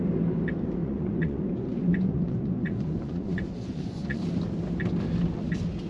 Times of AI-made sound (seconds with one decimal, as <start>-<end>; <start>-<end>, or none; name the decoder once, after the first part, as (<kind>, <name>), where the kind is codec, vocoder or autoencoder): 0.8-4.2 (vocoder, Vocos)